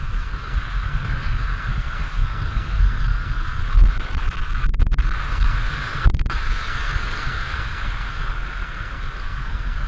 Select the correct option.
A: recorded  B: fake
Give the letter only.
B